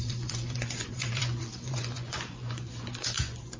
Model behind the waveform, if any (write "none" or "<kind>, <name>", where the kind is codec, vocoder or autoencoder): vocoder, Vocos